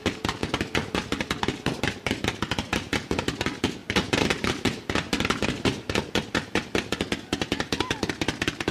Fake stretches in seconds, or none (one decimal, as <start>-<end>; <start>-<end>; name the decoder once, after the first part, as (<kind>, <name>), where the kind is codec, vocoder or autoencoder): none

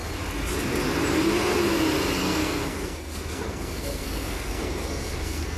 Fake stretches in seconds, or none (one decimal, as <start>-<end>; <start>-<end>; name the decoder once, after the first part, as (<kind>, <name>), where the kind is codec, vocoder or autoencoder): 2.2-5.6 (codec, SNAC)

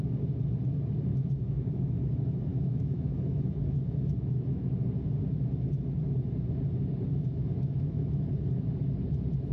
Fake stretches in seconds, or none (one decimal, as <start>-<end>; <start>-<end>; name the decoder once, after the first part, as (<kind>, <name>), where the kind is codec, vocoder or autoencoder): 1.1-2.1 (autoencoder, DAC-VAE); 2.5-4.7; 7.1-8.2

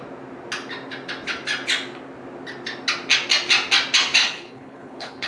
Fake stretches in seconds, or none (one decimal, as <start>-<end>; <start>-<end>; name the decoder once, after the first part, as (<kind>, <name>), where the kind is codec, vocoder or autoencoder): 4.2-5.3 (codec, HILCodec)

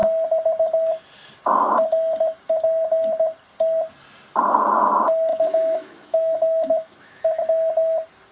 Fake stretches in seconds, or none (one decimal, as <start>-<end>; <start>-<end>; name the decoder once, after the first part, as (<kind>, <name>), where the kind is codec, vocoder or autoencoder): 5.3-7.4 (autoencoder, DAC-VAE)